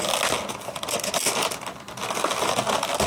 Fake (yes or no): no